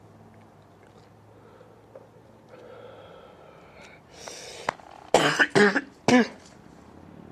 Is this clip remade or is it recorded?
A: recorded